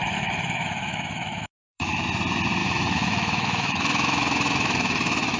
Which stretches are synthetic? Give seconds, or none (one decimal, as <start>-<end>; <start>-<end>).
0.0-2.0; 2.6-5.4